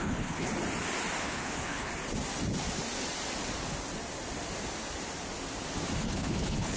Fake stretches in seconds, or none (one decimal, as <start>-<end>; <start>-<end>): 0.0-0.5; 1.2-1.9; 6.0-6.8